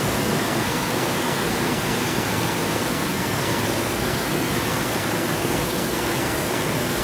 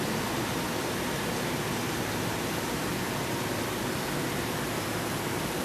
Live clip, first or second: second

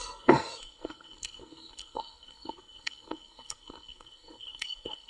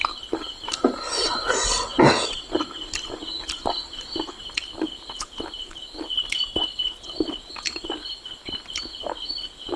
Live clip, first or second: second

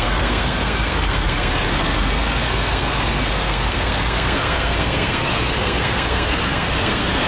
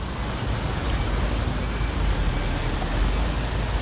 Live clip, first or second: second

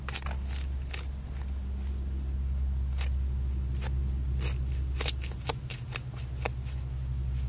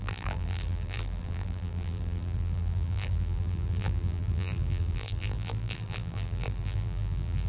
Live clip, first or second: first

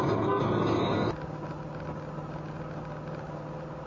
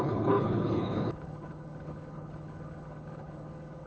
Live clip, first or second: first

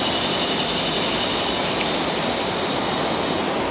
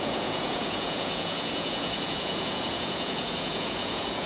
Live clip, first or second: first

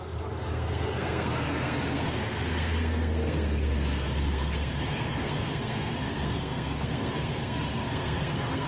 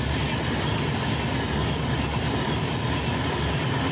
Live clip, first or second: second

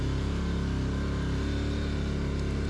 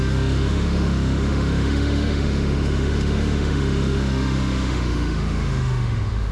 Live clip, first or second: first